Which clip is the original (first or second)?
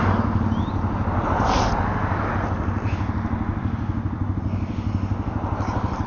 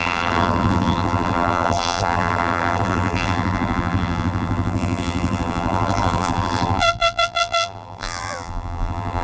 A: first